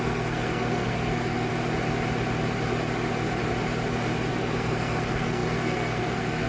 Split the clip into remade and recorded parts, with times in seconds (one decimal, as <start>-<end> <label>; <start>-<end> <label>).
0.0-1.5 remade; 1.5-4.3 recorded; 4.3-6.5 remade

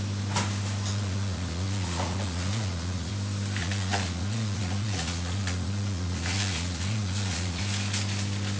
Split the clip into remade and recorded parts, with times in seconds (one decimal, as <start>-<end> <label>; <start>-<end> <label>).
0.0-0.9 recorded; 0.9-3.1 remade; 3.1-3.6 recorded; 3.6-7.6 remade; 7.6-8.6 recorded

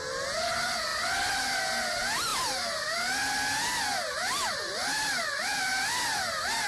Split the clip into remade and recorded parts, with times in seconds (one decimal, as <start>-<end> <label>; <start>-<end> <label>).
0.0-6.7 recorded

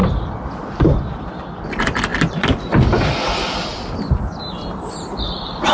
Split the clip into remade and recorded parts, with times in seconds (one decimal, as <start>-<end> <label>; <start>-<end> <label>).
0.0-1.7 remade; 1.7-2.1 recorded; 2.1-5.7 remade